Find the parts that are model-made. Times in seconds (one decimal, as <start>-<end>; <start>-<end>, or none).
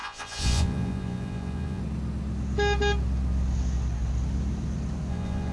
0.0-1.8; 5.1-5.5